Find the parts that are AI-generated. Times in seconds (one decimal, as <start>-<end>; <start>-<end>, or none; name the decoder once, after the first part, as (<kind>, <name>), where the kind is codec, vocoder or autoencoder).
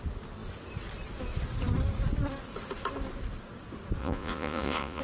4.0-5.0 (vocoder, Vocos)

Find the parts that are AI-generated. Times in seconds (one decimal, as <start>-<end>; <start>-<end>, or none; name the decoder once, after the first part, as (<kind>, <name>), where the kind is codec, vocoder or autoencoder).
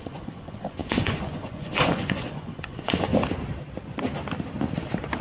0.0-3.1 (vocoder, Vocos)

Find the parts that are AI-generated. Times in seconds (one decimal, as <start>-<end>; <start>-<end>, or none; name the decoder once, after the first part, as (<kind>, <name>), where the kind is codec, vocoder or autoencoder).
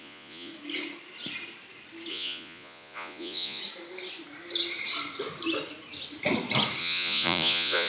0.0-0.5 (vocoder, Vocos); 2.1-3.6; 6.8-7.9